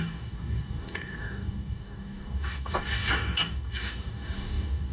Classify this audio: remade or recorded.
remade